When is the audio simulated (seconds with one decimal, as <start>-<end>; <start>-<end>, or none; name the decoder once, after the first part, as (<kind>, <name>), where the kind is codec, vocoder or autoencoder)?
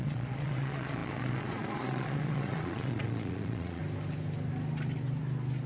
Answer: 0.0-3.8 (vocoder, Vocos)